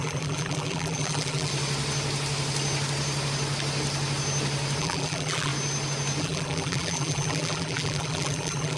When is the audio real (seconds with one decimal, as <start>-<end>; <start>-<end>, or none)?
1.5-4.8; 5.5-6.2